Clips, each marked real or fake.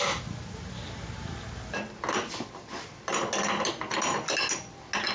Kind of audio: real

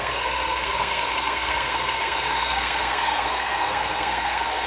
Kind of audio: fake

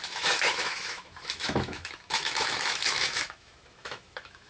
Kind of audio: fake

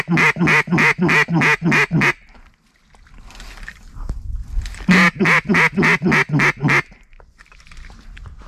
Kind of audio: real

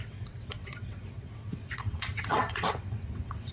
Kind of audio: fake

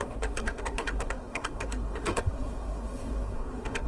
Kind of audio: fake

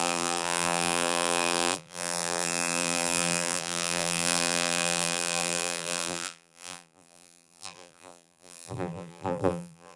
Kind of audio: fake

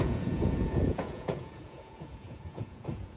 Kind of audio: fake